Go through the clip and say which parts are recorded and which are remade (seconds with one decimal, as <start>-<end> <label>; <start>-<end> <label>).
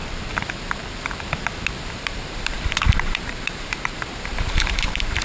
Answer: 0.0-1.9 recorded; 1.9-5.2 remade